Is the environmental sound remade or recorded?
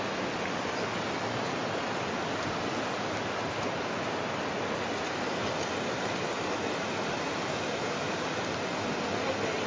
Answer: recorded